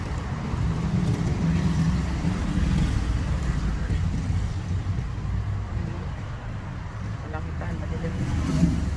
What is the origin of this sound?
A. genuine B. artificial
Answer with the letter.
A